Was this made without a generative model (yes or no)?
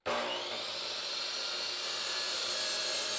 yes